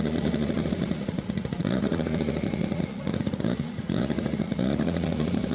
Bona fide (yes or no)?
no